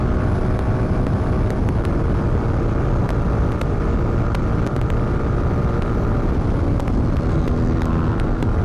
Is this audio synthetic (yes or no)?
no